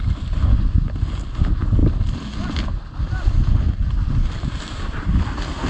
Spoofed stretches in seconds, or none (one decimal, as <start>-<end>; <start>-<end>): none